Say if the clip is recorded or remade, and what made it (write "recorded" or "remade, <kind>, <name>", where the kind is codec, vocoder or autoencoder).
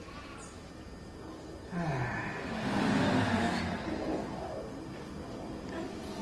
recorded